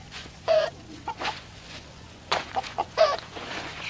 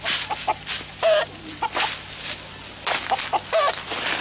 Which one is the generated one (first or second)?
first